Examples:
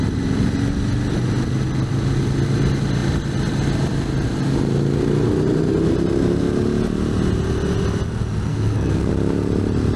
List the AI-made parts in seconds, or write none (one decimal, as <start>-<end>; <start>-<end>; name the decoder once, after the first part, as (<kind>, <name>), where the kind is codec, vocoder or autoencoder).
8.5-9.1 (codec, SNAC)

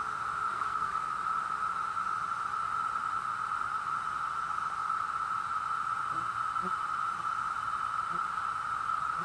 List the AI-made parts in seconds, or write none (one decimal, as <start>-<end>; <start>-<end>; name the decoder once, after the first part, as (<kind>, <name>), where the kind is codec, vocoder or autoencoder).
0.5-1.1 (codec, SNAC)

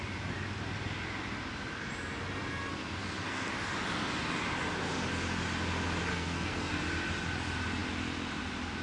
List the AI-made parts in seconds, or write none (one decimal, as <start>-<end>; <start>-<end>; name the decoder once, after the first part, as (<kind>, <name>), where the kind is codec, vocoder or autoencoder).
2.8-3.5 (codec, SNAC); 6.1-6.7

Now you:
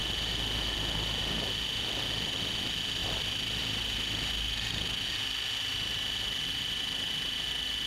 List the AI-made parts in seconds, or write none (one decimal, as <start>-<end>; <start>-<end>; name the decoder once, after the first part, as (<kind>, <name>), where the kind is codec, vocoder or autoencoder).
none

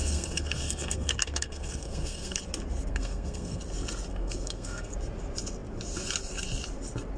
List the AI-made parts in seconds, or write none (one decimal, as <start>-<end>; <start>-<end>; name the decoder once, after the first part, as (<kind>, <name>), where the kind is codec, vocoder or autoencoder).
0.0-2.4 (codec, SNAC); 2.9-3.6; 4.1-4.9